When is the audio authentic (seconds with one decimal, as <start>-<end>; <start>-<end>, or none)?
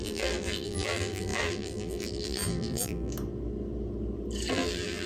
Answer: 3.1-4.5